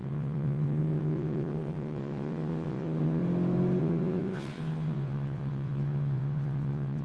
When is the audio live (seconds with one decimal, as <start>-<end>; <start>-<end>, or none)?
3.2-3.8